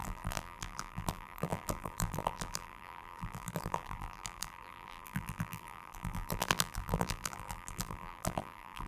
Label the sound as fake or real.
fake